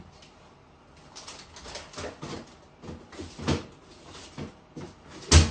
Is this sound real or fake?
real